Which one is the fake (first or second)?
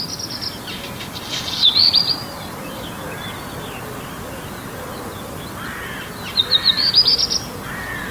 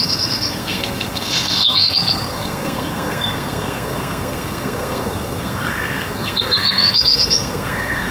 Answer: second